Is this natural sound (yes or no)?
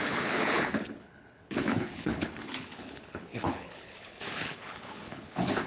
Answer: no